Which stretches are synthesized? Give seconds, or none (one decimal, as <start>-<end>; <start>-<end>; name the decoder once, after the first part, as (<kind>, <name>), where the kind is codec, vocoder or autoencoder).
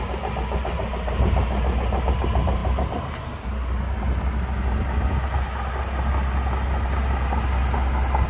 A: none